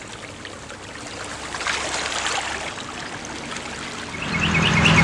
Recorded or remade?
recorded